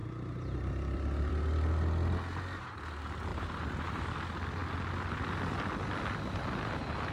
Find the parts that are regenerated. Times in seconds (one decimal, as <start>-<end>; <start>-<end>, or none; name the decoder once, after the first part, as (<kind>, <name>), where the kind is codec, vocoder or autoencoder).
3.3-4.0 (vocoder, BigVGAN v2)

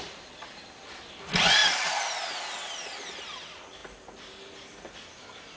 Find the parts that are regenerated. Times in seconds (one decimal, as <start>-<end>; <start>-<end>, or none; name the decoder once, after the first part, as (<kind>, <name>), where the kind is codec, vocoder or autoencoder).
0.0-1.6 (vocoder, BigVGAN v2); 2.3-5.6

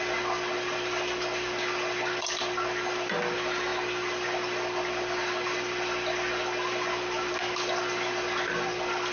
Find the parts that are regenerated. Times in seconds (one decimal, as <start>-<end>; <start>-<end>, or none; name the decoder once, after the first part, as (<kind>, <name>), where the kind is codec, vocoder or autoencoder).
none

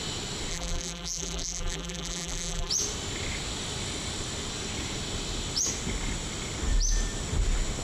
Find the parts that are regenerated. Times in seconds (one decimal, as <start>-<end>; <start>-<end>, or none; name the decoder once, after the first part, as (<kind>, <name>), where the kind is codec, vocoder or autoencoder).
0.5-2.7 (vocoder, BigVGAN v2)

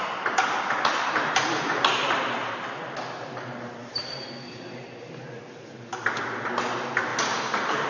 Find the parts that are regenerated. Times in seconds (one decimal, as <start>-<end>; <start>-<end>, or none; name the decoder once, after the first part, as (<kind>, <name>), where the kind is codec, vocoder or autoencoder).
0.9-1.7 (vocoder, BigVGAN v2); 3.8-5.4; 7.1-7.9

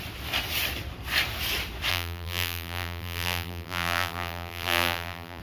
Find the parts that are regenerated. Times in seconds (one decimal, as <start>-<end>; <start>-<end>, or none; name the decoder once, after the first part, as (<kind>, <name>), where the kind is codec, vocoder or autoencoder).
1.9-5.4 (vocoder, BigVGAN v2)